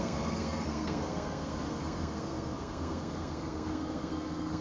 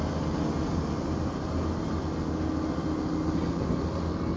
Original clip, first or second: second